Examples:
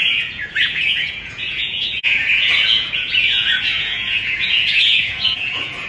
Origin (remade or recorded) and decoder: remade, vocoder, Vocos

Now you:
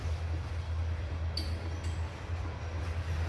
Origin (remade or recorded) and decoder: recorded